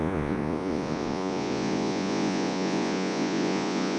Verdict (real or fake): fake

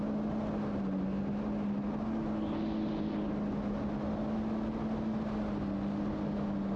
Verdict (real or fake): real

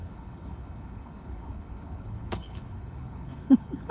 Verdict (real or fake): fake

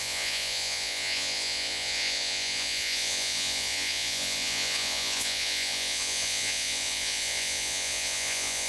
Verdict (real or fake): fake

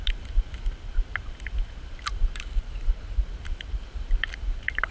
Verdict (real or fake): fake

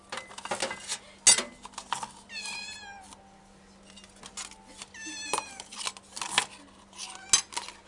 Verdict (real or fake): real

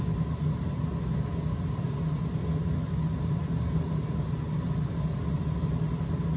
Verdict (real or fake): real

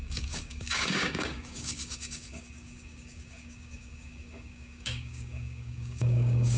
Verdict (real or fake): fake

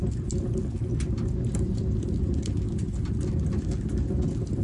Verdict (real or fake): real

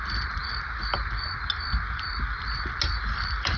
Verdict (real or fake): real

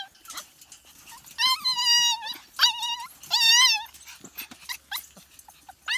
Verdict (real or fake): real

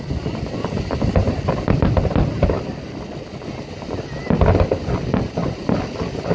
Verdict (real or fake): real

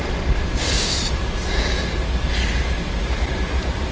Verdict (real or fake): real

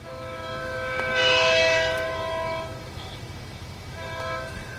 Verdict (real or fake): fake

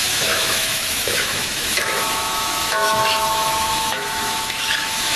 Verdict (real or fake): fake